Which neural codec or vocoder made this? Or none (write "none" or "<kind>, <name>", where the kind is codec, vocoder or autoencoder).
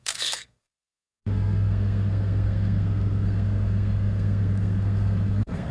codec, SNAC